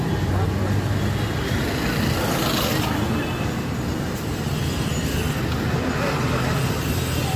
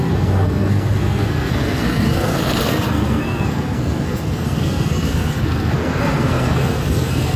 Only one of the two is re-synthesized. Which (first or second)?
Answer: second